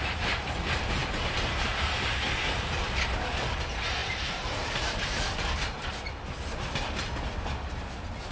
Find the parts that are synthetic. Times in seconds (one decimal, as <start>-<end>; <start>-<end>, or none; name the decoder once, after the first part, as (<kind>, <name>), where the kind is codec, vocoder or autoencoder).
1.0-2.1 (vocoder, BigVGAN v2); 4.0-5.2